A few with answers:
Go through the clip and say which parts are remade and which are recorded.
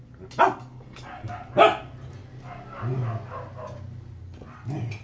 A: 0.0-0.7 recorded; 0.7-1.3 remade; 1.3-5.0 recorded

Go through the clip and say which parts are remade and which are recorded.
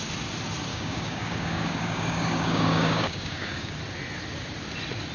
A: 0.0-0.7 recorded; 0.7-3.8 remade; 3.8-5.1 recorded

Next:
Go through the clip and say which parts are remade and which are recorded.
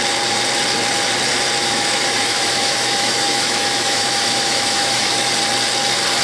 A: 0.0-1.6 recorded; 1.6-5.3 remade; 5.3-6.2 recorded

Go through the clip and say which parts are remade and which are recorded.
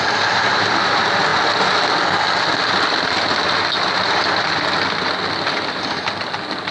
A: 0.0-6.7 recorded